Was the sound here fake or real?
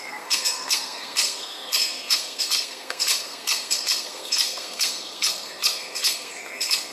fake